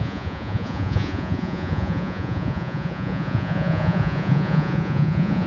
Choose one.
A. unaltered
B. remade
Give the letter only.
B